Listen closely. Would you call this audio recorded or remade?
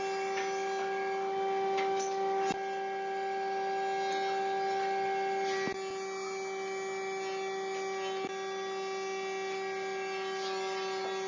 recorded